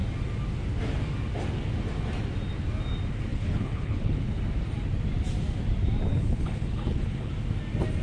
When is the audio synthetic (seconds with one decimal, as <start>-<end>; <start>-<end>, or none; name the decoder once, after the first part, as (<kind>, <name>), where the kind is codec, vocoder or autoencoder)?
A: 3.3-4.4 (codec, HILCodec); 6.1-7.3